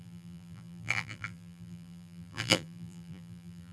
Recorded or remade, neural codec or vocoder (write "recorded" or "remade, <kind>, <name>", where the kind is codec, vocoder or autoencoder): remade, vocoder, BigVGAN v2